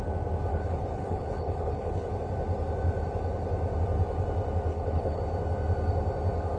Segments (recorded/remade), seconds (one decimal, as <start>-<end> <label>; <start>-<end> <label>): 0.0-0.5 recorded; 0.5-2.1 remade; 2.1-4.7 recorded; 4.7-5.2 remade; 5.2-6.6 recorded